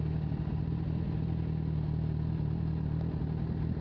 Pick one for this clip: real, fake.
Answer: real